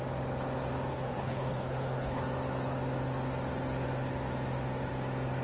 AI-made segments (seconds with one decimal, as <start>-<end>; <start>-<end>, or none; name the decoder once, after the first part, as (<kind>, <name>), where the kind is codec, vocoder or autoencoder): 0.9-2.2 (codec, HILCodec)